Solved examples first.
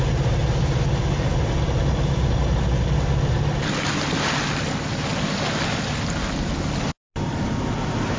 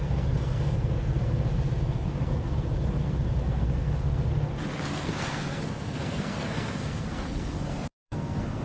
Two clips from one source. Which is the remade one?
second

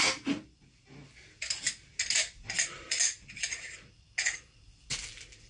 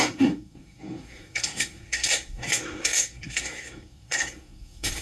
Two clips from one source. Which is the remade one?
second